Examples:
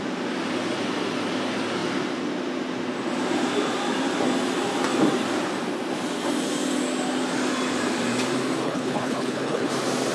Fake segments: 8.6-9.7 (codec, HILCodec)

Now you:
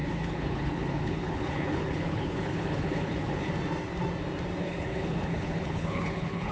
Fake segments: 0.0-3.5 (codec, HILCodec); 4.6-6.5

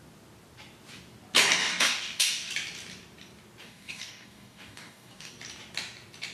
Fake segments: 1.6-2.5 (codec, DAC); 3.6-5.3